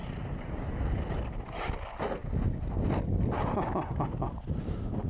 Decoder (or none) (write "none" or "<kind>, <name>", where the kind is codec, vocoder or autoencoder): none